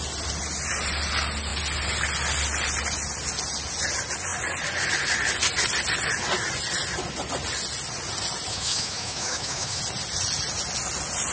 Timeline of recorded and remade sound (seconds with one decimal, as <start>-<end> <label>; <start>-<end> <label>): 0.0-8.5 recorded; 8.5-9.8 remade; 9.8-11.3 recorded